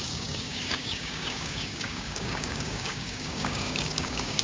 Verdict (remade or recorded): remade